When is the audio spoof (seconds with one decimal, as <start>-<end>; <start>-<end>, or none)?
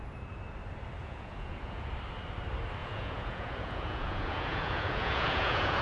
1.0-1.9; 2.8-5.8